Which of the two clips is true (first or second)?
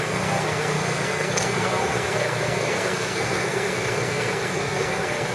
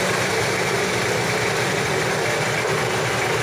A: second